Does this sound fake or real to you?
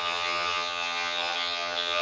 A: fake